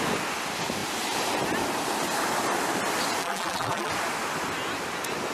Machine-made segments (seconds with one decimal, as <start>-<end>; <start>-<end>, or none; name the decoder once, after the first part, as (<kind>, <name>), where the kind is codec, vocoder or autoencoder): 3.2-3.9 (vocoder, BigVGAN v2)